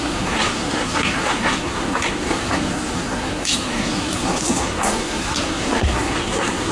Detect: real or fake fake